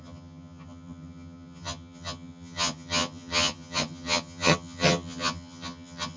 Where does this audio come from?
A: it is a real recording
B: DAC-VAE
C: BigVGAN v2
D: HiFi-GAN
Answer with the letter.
D